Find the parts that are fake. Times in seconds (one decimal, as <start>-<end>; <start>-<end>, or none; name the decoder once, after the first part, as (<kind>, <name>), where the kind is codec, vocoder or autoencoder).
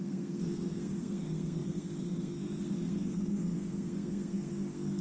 0.0-5.0 (codec, SNAC)